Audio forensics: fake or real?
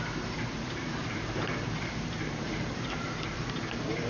fake